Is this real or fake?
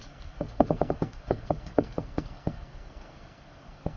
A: fake